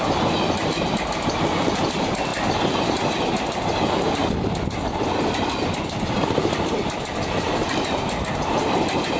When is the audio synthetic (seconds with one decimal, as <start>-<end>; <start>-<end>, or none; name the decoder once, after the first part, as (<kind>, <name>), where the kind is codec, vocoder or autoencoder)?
2.3-6.7 (vocoder, BigVGAN v2)